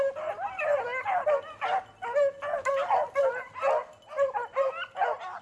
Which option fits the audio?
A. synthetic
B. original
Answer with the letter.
B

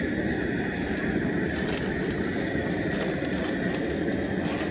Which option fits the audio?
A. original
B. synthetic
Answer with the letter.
A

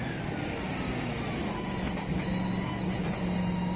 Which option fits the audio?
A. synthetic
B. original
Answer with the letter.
B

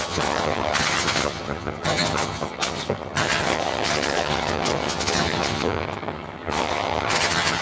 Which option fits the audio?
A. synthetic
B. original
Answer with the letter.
A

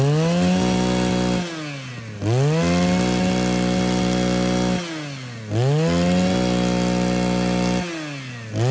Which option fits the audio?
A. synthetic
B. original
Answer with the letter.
B